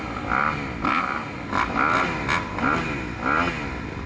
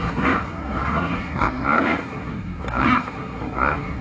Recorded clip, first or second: first